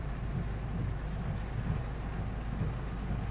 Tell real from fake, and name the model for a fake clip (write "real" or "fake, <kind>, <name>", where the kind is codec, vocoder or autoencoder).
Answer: real